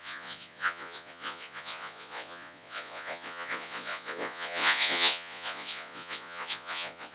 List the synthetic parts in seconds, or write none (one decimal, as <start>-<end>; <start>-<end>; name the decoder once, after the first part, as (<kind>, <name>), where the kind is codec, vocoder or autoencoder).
0.0-7.1 (vocoder, Vocos)